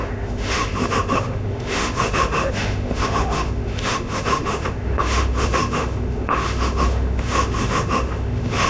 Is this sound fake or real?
fake